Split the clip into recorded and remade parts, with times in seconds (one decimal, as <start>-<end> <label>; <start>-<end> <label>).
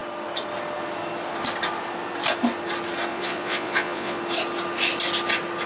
0.0-3.1 recorded; 3.1-4.2 remade; 4.2-5.7 recorded